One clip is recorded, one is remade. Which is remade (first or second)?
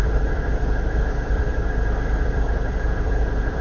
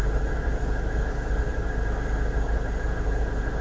first